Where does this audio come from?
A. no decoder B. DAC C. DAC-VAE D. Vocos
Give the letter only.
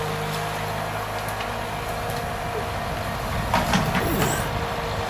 A